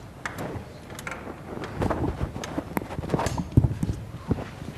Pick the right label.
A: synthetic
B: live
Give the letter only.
B